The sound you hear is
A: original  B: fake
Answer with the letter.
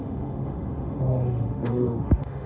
B